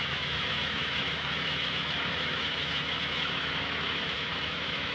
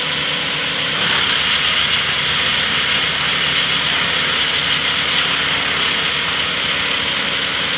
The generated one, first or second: first